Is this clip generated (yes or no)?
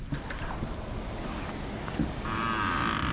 no